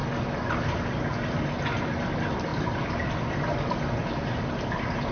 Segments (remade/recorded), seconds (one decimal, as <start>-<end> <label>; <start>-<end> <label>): 0.0-5.1 recorded